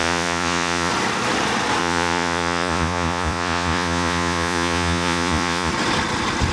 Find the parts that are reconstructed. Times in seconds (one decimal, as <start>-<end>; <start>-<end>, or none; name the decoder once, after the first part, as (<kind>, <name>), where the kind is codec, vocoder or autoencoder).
0.0-0.9 (vocoder, Vocos); 1.8-5.7